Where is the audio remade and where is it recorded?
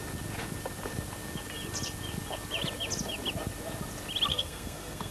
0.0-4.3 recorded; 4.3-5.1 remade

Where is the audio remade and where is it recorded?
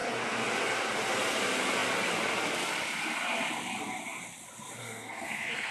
0.0-4.8 recorded; 4.8-5.7 remade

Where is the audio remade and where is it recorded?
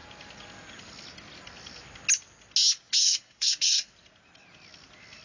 0.0-3.0 recorded; 3.0-3.9 remade; 3.9-5.2 recorded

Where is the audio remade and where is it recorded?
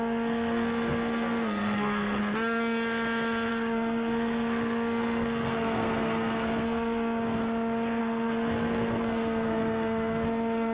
0.0-2.2 remade; 2.2-3.5 recorded; 3.5-7.4 remade; 7.4-8.0 recorded; 8.0-10.7 remade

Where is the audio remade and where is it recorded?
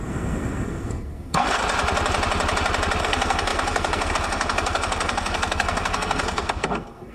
0.0-1.6 remade; 1.6-3.0 recorded; 3.0-7.1 remade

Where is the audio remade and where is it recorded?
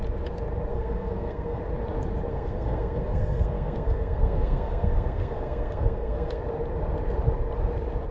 0.0-0.7 recorded; 0.7-1.6 remade; 1.6-2.3 recorded; 2.3-6.4 remade; 6.4-8.1 recorded